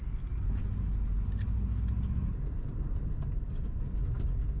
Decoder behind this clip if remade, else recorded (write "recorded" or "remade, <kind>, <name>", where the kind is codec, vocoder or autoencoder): recorded